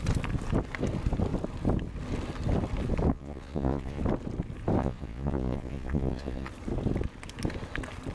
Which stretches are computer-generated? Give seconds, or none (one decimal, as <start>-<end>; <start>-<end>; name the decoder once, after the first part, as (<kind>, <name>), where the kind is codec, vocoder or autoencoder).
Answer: 3.1-4.0 (vocoder, Vocos); 4.8-6.5